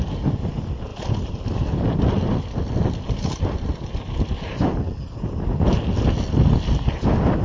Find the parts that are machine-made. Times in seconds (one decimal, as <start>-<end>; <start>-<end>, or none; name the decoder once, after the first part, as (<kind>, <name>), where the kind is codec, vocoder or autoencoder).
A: none